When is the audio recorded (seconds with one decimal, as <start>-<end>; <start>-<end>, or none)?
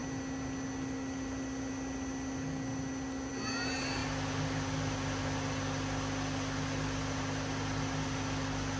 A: 0.0-8.8